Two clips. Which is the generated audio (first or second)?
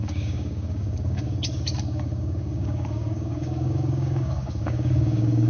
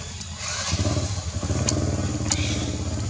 first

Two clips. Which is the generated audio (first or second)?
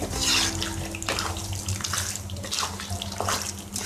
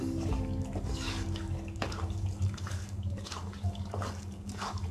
second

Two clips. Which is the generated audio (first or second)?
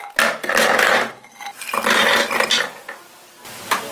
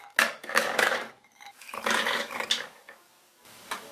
second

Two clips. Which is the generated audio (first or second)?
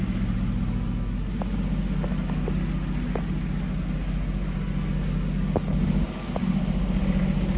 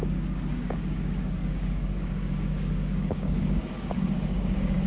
second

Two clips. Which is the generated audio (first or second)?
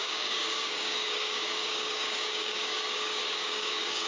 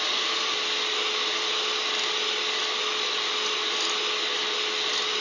first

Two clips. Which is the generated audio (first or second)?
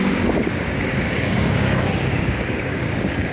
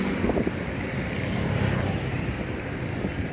first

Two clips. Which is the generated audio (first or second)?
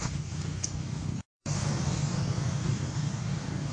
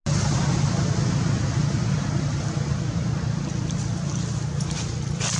first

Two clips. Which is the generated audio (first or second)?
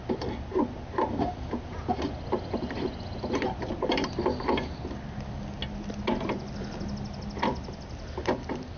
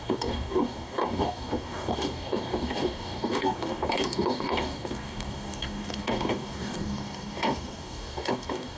second